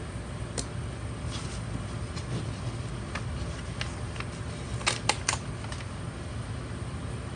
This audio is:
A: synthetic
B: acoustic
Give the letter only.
B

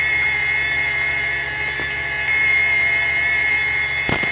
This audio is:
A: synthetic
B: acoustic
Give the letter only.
B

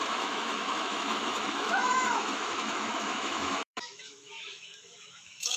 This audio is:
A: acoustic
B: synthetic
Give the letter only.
B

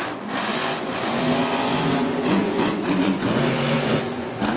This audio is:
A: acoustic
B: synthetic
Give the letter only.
B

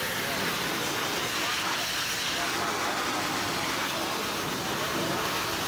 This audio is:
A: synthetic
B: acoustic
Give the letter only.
B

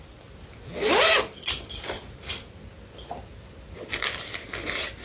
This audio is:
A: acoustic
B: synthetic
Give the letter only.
A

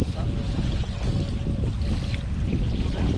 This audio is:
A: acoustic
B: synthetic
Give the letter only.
A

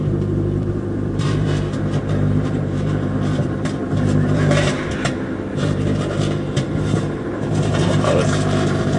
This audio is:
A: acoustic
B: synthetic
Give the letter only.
B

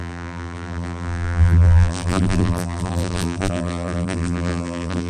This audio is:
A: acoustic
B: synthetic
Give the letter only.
B